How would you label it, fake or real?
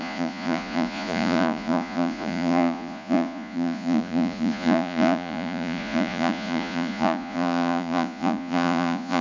fake